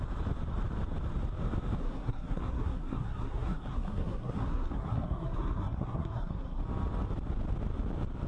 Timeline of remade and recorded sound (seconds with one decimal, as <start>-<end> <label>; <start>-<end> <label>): 0.0-1.8 recorded; 1.8-6.6 remade; 6.6-8.3 recorded